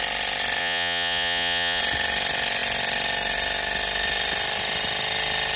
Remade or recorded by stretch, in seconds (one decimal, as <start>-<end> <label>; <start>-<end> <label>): 0.0-0.6 recorded; 0.6-1.8 remade; 1.8-5.6 recorded